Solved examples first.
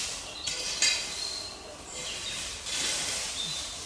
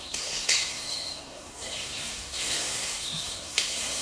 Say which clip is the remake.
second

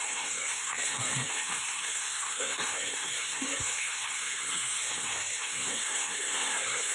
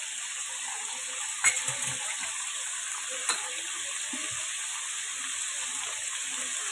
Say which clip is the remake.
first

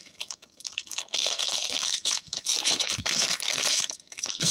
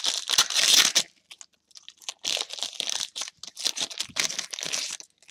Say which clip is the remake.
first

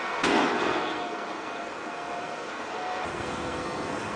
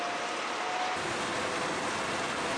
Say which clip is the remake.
first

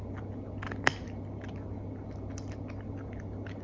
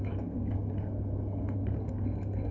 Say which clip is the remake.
second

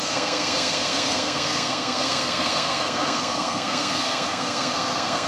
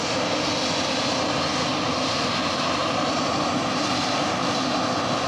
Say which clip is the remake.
first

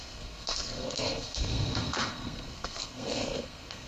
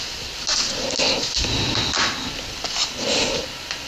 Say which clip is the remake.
first